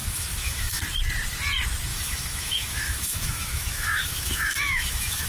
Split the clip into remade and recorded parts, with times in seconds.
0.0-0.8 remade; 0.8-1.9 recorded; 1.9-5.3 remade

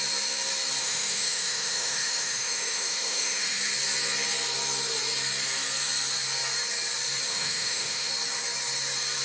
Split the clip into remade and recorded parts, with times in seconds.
0.0-0.8 recorded; 0.8-3.6 remade; 3.6-7.3 recorded; 7.3-8.1 remade; 8.1-9.2 recorded

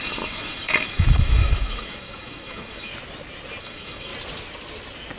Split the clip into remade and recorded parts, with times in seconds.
0.0-2.9 remade; 2.9-3.6 recorded; 3.6-4.1 remade; 4.1-5.2 recorded

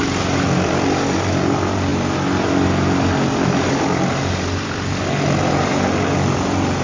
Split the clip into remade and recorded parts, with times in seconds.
0.0-6.8 recorded

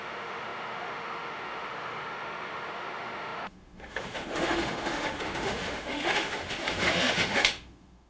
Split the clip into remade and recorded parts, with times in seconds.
0.0-8.1 remade

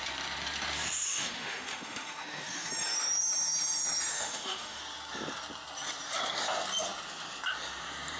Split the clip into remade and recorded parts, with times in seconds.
0.0-1.1 recorded; 1.1-2.7 remade; 2.7-4.1 recorded; 4.1-4.8 remade; 4.8-8.2 recorded